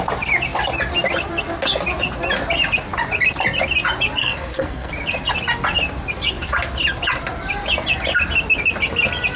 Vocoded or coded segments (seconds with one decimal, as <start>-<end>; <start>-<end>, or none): 4.2-4.9